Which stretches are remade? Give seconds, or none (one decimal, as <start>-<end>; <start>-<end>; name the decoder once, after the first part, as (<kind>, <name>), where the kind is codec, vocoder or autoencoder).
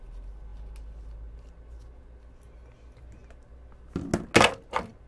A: none